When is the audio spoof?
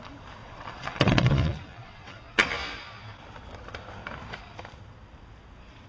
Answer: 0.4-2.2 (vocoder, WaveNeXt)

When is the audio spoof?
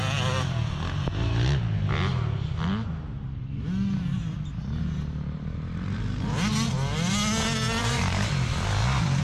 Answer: 7.8-9.2 (vocoder, BigVGAN v2)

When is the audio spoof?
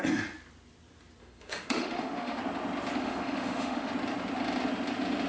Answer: 1.2-2.4 (autoencoder, DAC-VAE); 3.0-3.9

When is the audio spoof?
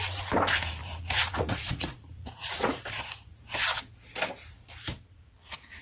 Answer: 0.8-3.3 (vocoder, Vocos)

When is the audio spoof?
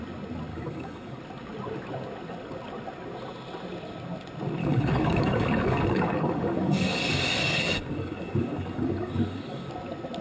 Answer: 0.5-1.2 (codec, DAC); 4.6-9.7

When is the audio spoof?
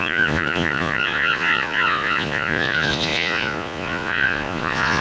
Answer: 0.0-5.0 (vocoder, Vocos)